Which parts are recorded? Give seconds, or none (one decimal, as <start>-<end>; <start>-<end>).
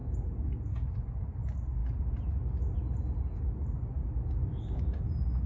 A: 1.2-5.5